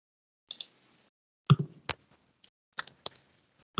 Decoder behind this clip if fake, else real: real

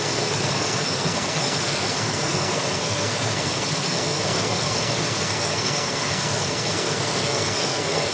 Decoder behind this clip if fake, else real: fake, codec, SNAC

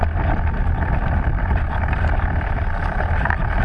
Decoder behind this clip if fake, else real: real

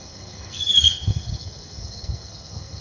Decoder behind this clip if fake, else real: fake, codec, SNAC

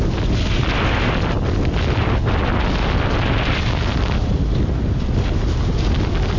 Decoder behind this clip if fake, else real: real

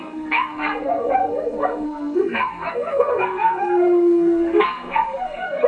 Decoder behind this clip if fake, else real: fake, codec, SNAC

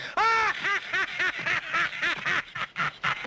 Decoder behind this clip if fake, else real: real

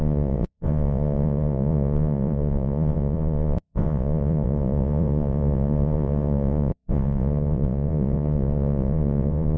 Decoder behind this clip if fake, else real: fake, vocoder, Vocos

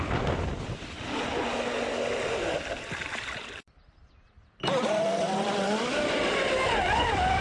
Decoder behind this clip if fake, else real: real